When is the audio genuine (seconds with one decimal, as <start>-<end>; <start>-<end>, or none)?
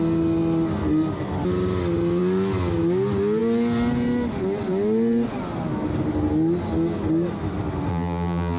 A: 0.0-7.9